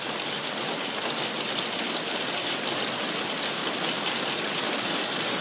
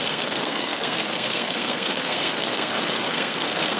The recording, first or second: first